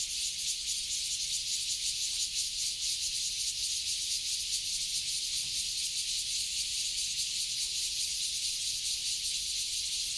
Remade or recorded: recorded